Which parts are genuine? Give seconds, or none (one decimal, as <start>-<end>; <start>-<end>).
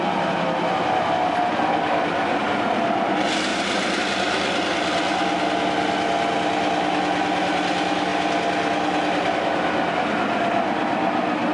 0.0-3.5; 4.0-11.5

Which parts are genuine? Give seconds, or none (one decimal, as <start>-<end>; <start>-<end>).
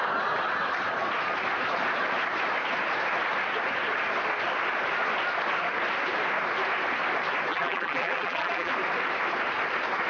0.0-7.5; 8.7-10.1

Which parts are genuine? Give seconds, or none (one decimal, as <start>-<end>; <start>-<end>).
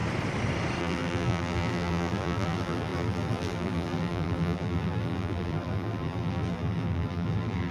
0.0-0.8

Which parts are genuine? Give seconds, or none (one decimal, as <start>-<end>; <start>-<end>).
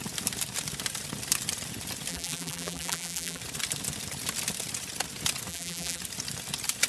0.0-2.1; 3.4-5.5; 6.0-6.9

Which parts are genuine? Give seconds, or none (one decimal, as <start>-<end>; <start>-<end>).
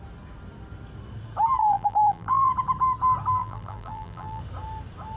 0.0-1.6; 2.5-3.4; 4.4-5.2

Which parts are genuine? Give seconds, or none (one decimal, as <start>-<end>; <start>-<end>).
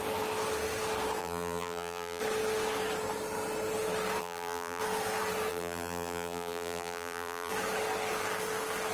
0.0-1.2; 2.2-4.2; 4.8-5.5; 7.5-8.9